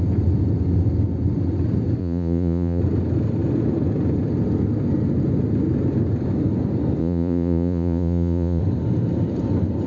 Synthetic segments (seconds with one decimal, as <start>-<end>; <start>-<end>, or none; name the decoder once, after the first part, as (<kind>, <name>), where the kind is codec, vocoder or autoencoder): 2.0-2.8 (vocoder, Vocos); 7.0-8.6